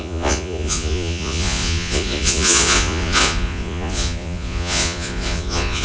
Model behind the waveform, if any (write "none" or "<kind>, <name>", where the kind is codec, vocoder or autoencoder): vocoder, Vocos